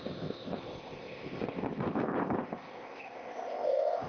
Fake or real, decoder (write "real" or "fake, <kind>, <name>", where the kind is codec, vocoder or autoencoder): fake, codec, ZipCodec